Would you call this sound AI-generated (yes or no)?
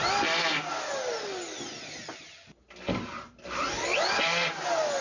no